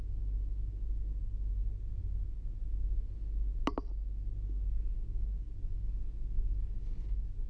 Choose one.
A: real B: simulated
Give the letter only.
A